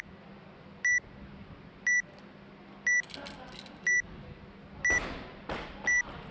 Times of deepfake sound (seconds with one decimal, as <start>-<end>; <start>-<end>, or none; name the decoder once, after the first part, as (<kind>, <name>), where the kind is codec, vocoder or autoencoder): none